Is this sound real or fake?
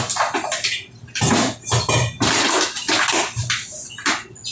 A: real